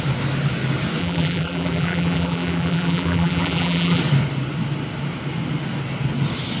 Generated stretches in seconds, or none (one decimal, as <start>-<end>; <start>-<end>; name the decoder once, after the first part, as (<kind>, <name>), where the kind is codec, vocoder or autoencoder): 1.0-4.0 (vocoder, BigVGAN v2)